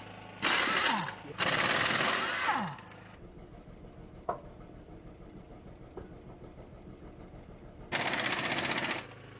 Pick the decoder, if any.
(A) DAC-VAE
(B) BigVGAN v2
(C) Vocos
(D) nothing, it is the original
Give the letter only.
D